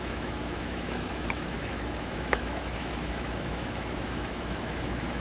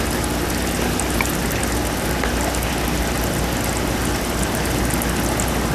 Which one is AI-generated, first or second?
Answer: first